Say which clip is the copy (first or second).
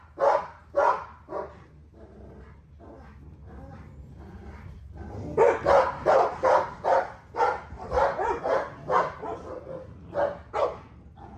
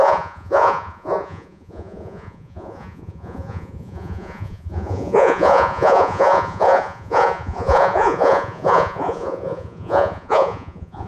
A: second